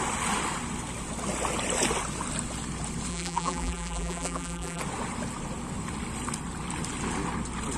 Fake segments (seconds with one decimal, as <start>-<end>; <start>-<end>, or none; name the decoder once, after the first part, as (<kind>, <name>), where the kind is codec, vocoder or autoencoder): 3.1-4.8 (vocoder, BigVGAN v2)